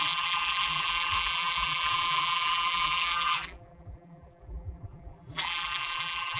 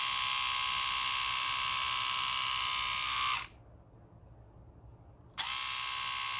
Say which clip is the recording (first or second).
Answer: second